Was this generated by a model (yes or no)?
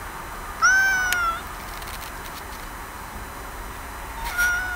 no